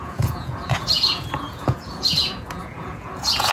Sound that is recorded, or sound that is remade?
remade